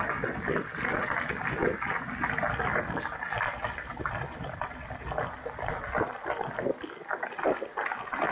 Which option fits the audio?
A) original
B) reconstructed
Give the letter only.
A